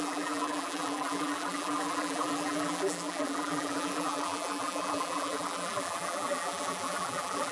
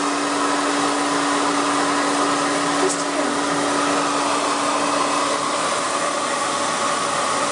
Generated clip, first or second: first